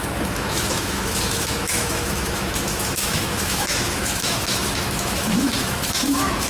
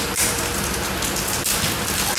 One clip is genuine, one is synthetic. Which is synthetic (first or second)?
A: first